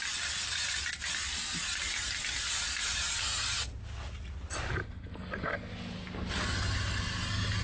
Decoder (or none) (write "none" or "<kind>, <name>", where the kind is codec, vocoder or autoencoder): none